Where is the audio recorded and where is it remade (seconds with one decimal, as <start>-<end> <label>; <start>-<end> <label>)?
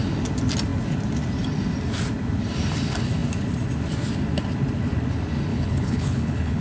0.0-5.5 recorded; 5.5-6.6 remade